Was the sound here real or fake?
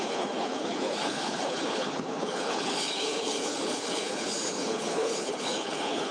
fake